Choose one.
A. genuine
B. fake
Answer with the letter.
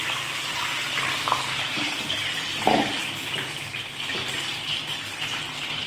A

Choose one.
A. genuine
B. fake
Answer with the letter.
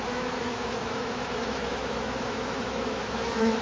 B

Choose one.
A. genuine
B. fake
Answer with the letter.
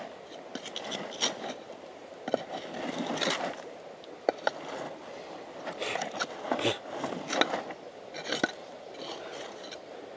A